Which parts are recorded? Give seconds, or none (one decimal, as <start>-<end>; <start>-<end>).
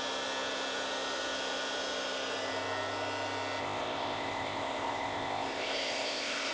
0.0-3.6